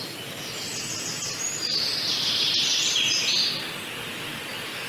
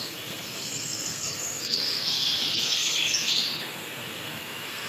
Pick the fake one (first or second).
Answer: second